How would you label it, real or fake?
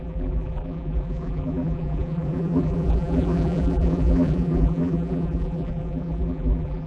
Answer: fake